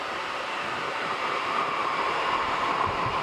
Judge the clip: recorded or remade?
remade